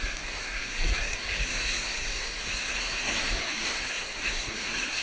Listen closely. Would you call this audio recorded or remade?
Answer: remade